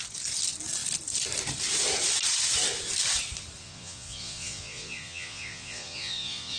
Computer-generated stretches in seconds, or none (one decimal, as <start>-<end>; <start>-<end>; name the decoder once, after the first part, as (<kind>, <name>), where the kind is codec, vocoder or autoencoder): 3.6-6.6 (vocoder, Vocos)